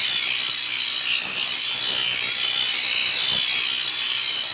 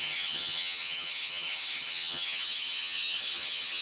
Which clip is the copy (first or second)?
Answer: second